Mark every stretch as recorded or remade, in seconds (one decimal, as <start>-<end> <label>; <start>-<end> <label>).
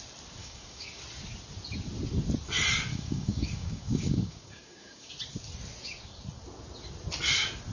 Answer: 0.0-0.4 recorded; 0.4-1.0 remade; 1.0-2.9 recorded; 2.9-5.1 remade; 5.1-7.7 recorded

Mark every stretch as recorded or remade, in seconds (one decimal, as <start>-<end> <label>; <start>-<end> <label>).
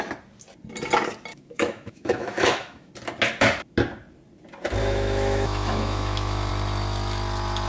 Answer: 0.0-1.3 recorded; 1.3-2.9 remade; 2.9-4.8 recorded; 4.8-6.5 remade; 6.5-7.7 recorded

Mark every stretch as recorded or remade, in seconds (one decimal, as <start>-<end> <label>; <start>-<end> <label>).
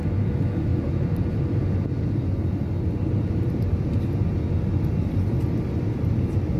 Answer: 0.0-6.6 recorded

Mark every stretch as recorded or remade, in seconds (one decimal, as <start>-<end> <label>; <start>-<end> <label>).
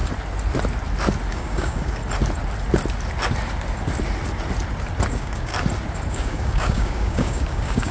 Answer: 0.0-1.3 recorded; 1.3-2.0 remade; 2.0-5.1 recorded; 5.1-5.5 remade; 5.5-6.1 recorded; 6.1-7.9 remade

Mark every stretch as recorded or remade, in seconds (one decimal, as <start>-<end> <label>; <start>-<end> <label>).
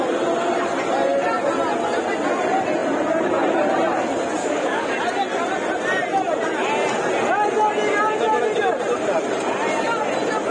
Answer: 0.0-4.4 recorded; 4.4-4.9 remade; 4.9-10.5 recorded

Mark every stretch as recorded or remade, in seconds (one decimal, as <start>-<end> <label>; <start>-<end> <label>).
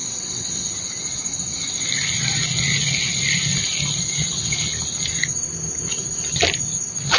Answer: 0.0-0.7 remade; 0.7-7.2 recorded